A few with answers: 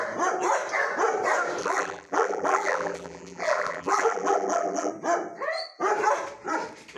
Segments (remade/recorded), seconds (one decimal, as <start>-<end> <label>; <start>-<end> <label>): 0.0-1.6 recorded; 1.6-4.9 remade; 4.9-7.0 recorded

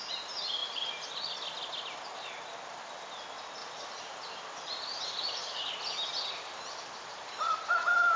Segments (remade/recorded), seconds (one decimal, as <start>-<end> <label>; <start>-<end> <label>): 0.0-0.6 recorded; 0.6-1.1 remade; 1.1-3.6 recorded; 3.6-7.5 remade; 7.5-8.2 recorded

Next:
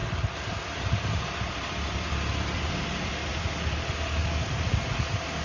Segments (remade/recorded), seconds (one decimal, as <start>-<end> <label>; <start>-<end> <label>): 0.0-2.7 remade; 2.7-3.2 recorded; 3.2-4.5 remade; 4.5-5.4 recorded

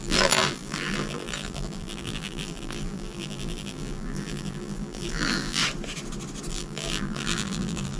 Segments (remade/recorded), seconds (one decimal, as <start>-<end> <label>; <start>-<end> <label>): 0.0-5.6 remade; 5.6-6.5 recorded; 6.5-8.0 remade